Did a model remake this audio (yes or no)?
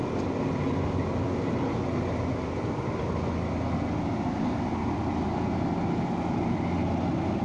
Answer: no